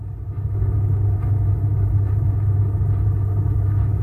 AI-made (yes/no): no